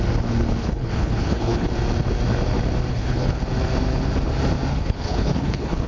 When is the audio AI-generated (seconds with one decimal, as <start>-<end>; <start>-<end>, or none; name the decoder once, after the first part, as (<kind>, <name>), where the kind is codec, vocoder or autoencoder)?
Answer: 0.6-1.7 (codec, HILCodec); 2.9-3.4; 4.7-5.9